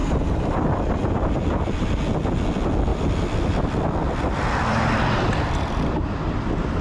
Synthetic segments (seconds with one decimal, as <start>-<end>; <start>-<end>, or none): 0.0-2.0; 2.9-6.8